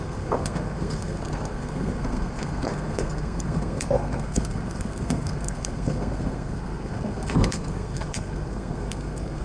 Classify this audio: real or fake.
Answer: fake